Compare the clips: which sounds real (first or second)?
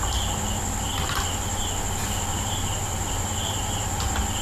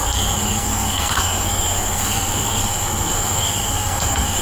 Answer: first